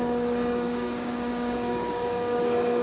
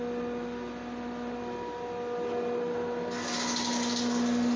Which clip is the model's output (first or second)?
first